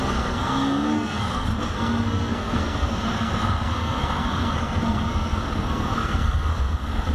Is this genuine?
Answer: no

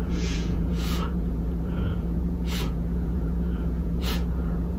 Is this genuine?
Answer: no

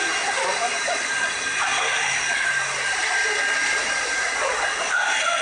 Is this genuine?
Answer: no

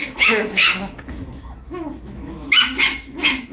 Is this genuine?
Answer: no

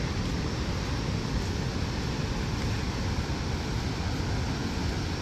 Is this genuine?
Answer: yes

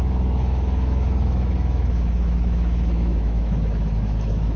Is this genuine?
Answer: no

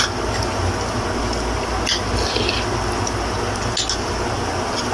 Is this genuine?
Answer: yes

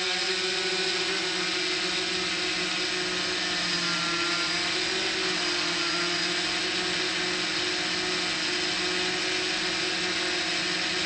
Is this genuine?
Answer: yes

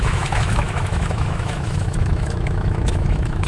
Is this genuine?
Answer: no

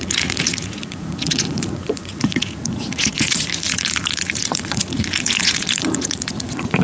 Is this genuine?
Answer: no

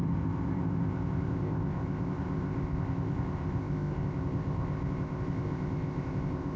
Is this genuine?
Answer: no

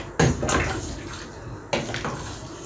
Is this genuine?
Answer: yes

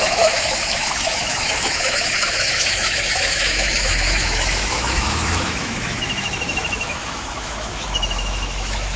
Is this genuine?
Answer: no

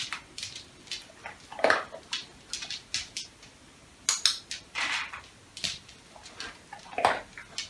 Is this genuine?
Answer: yes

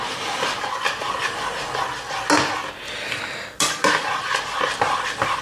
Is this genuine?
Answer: yes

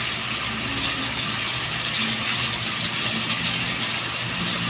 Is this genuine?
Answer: yes